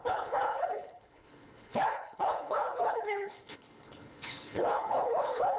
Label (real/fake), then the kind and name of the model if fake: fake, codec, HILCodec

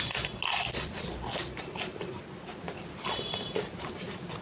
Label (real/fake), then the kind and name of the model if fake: real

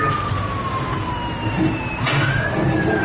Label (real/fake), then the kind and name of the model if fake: real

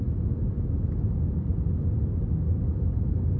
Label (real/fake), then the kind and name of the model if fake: real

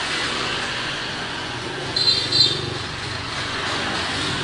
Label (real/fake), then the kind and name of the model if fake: fake, vocoder, Vocos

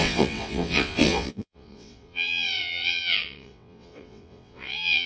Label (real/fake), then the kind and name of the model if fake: fake, vocoder, WaveNeXt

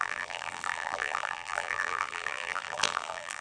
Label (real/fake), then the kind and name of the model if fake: fake, vocoder, BigVGAN v2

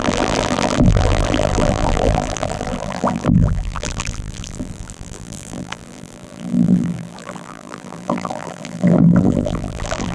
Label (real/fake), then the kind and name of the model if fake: fake, vocoder, BigVGAN v2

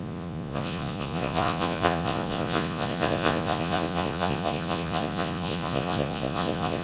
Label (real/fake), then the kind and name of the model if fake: fake, vocoder, Vocos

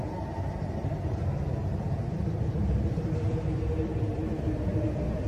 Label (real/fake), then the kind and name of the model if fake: real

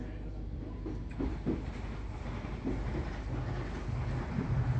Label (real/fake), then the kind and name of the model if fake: real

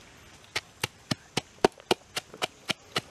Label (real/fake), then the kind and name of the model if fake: real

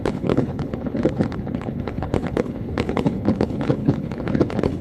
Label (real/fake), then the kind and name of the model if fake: fake, codec, HILCodec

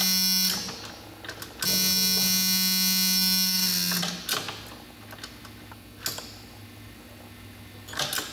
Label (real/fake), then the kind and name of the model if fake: real